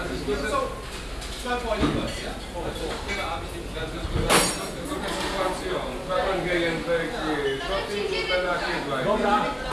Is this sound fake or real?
real